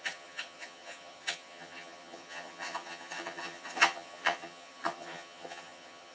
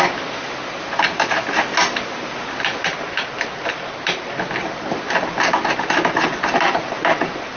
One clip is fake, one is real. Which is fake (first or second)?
first